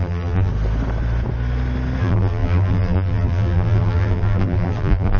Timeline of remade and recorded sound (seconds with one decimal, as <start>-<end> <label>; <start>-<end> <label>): 0.0-0.5 remade; 0.5-2.0 recorded; 2.0-5.2 remade